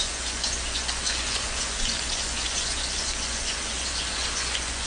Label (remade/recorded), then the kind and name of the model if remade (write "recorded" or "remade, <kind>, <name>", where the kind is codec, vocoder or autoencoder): remade, vocoder, Vocos